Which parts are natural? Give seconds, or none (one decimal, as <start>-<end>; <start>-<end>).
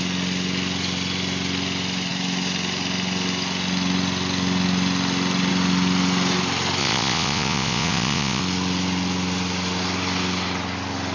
0.0-6.8; 8.4-11.1